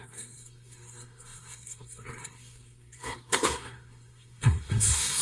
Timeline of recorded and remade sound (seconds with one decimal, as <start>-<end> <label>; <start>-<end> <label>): 0.0-5.2 remade